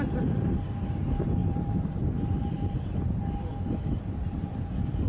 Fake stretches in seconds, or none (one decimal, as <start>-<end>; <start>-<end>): 1.4-3.3